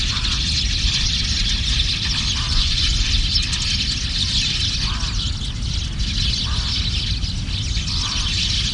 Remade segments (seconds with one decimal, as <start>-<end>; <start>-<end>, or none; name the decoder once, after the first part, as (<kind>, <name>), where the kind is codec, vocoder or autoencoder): 2.5-3.1 (vocoder, Vocos)